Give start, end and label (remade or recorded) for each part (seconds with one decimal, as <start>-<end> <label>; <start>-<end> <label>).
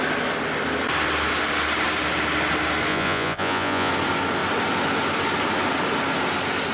0.0-2.9 recorded; 2.9-3.9 remade; 3.9-6.7 recorded